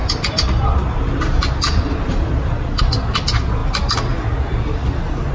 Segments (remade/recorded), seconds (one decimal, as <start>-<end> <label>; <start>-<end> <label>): 0.0-2.8 remade; 2.8-5.3 recorded

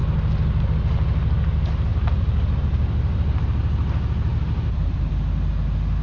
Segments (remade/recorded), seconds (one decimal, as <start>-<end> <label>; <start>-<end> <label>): 0.0-1.9 recorded; 1.9-3.4 remade; 3.4-4.3 recorded; 4.3-5.1 remade; 5.1-6.0 recorded

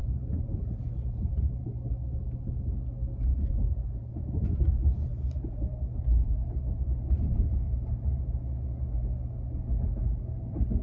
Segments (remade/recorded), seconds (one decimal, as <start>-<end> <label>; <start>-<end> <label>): 0.0-1.7 remade; 1.7-3.3 recorded; 3.3-8.2 remade; 8.2-10.8 recorded

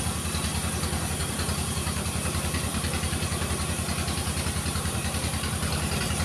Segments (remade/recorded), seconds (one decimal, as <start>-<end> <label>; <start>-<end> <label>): 0.0-0.5 remade; 0.5-1.1 recorded; 1.1-6.2 remade